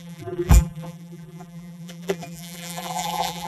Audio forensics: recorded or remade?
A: remade